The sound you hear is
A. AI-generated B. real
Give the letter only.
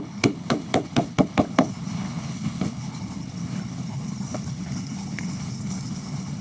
A